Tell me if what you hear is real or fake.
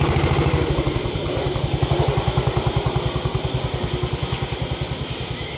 real